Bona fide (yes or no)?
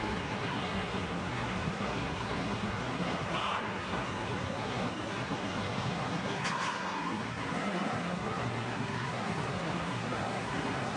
no